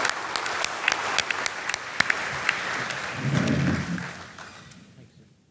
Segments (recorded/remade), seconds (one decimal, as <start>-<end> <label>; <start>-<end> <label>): 0.0-5.5 recorded